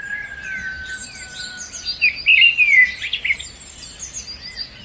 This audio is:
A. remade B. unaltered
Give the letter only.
B